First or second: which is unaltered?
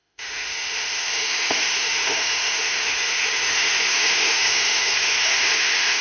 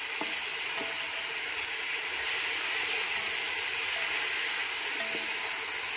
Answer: second